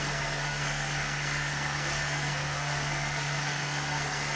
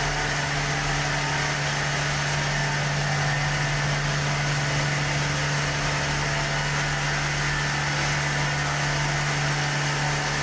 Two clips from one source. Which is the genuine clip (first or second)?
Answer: second